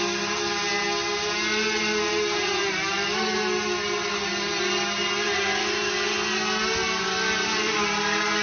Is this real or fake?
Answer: real